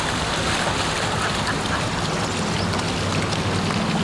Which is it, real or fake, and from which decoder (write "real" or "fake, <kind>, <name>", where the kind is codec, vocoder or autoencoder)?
real